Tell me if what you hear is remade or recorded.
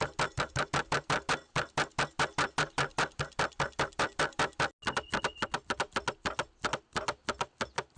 recorded